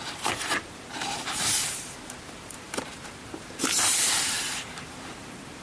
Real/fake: fake